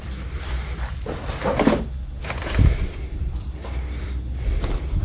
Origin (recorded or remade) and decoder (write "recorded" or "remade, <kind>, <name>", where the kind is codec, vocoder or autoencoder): remade, vocoder, BigVGAN v2